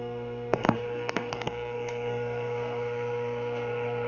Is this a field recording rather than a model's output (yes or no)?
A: no